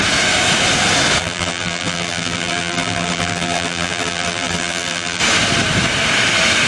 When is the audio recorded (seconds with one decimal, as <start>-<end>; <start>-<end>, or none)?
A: 0.0-1.2; 5.2-6.7